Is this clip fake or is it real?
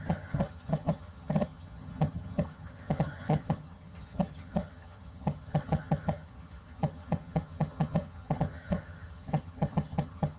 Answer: fake